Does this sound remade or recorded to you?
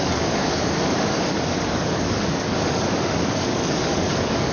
remade